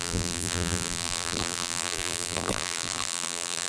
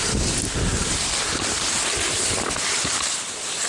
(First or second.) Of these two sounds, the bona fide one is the second